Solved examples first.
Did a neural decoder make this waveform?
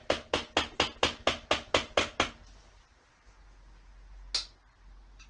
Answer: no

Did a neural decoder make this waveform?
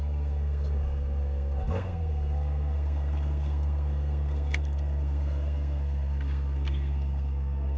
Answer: yes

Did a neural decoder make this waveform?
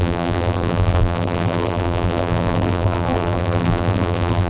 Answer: yes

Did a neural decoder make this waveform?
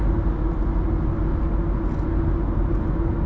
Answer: no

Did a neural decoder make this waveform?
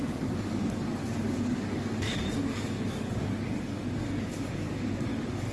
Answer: yes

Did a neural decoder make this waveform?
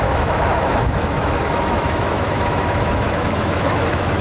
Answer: yes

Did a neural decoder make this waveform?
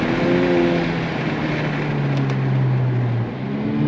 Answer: no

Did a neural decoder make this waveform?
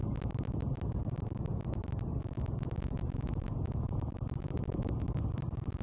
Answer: no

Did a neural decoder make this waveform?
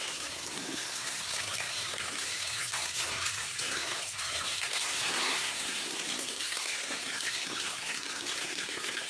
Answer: yes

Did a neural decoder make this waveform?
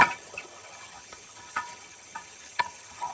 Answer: yes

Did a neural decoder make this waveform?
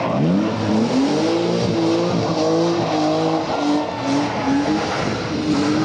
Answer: no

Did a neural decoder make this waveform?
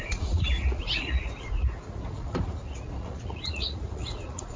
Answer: yes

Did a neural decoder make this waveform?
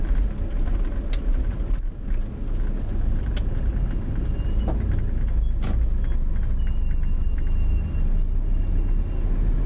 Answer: no